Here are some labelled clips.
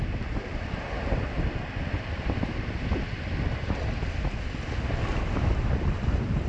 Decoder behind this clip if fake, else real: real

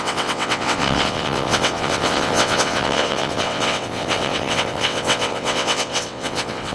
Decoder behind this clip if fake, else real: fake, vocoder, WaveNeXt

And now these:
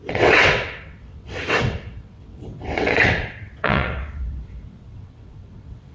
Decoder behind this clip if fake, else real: fake, vocoder, WaveNeXt